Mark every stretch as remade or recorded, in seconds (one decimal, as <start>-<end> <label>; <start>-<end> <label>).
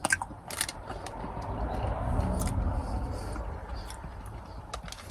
0.0-5.1 recorded